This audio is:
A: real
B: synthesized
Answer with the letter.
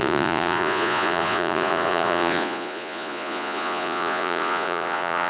B